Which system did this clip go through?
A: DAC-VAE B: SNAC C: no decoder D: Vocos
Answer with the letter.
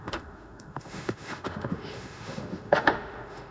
A